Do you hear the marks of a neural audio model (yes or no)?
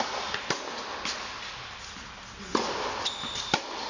no